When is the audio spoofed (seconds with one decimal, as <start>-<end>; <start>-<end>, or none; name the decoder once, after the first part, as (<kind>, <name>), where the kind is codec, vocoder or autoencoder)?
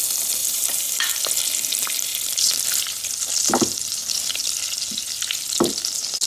0.4-1.2 (vocoder, BigVGAN v2)